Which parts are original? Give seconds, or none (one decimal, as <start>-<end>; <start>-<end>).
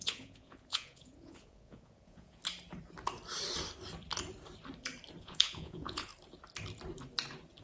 2.4-5.2; 6.1-7.6